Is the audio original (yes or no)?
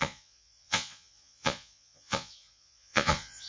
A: no